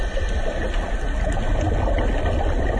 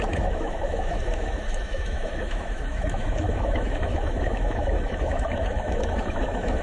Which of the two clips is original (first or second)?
first